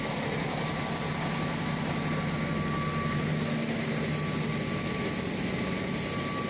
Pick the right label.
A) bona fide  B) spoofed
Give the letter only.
A